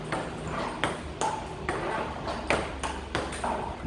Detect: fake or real real